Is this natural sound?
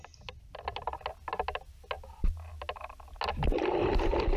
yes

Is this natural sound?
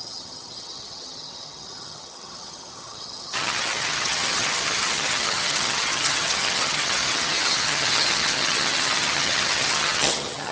no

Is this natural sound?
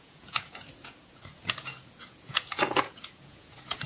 no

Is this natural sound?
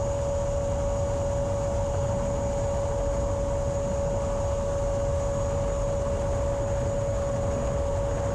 yes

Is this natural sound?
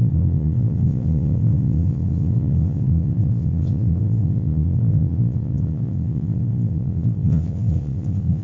no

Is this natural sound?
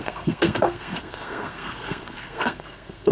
no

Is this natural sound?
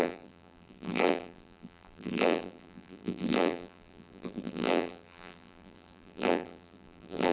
no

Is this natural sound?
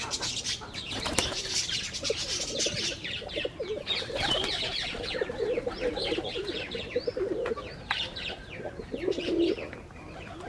no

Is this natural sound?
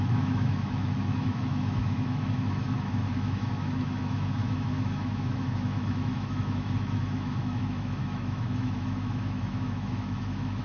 no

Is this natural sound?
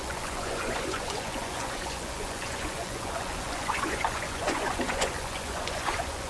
no